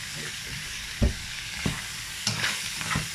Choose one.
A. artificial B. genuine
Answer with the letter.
A